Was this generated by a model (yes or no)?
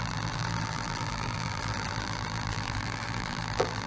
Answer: yes